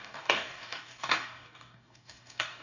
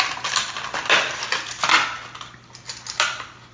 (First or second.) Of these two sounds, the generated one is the first